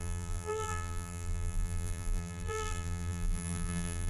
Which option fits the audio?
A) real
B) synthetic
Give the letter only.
B